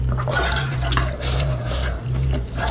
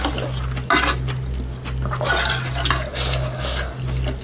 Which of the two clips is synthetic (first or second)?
first